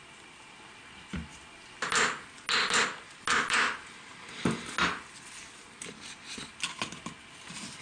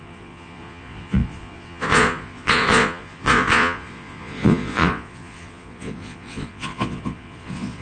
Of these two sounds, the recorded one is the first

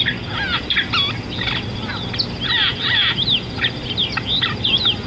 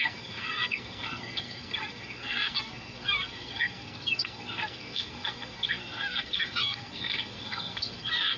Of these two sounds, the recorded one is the first